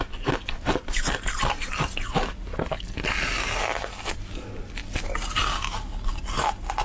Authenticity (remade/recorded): recorded